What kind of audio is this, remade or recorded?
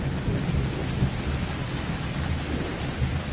recorded